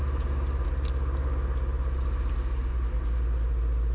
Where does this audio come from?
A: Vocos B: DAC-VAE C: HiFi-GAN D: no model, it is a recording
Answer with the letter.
D